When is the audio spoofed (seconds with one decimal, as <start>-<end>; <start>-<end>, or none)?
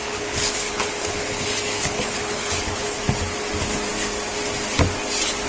0.0-3.0